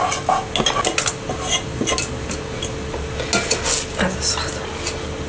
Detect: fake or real real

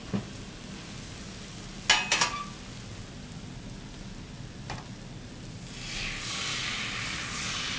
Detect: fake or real real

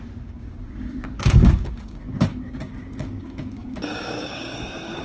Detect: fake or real fake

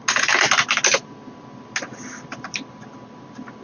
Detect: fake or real real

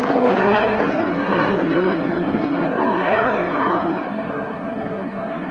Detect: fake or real fake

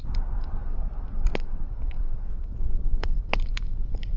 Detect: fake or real fake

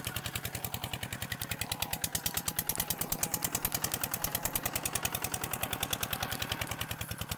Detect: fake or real real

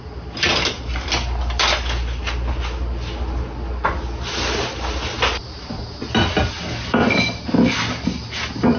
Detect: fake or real real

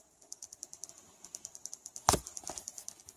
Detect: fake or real real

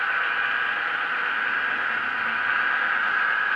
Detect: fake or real real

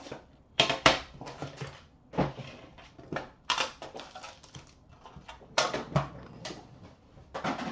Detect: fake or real fake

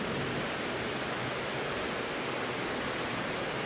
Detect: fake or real real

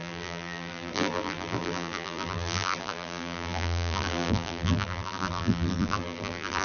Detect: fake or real fake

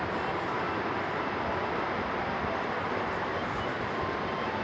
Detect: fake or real real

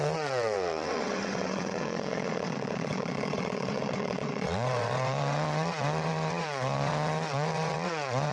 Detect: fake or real fake